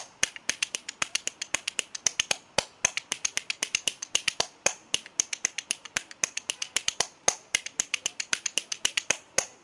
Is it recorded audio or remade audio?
recorded